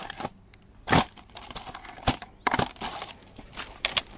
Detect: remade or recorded recorded